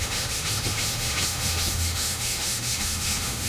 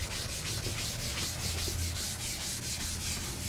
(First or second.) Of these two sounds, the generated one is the first